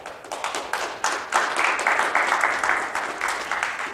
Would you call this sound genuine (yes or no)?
yes